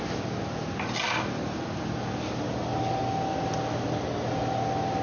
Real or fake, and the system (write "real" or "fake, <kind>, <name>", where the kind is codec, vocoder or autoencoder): real